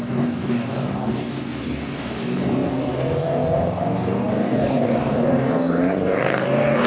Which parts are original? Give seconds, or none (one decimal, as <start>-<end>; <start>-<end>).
none